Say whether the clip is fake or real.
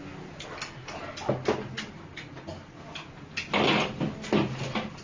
real